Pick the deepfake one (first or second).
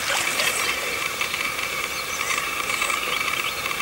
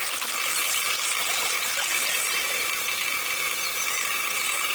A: first